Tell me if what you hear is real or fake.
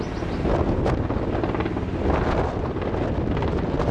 real